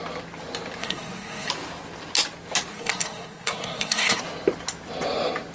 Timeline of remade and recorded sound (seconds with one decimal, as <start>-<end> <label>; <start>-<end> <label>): 0.0-0.8 recorded; 0.8-1.5 remade; 1.5-2.7 recorded; 2.7-4.2 remade; 4.2-5.5 recorded